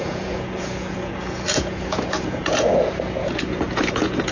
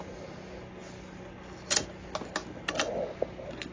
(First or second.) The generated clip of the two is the first